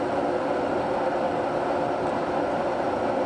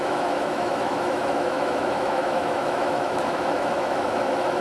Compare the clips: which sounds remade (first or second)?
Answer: second